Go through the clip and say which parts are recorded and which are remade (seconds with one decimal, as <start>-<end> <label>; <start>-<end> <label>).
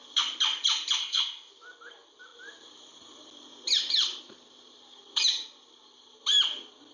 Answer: 0.0-1.0 recorded; 1.0-1.5 remade; 1.5-6.9 recorded